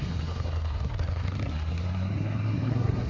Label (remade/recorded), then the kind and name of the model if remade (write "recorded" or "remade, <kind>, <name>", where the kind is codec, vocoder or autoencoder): remade, codec, SNAC